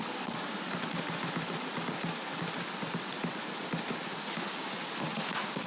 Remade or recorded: recorded